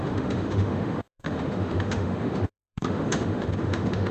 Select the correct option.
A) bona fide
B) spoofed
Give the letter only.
B